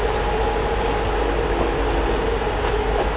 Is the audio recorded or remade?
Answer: recorded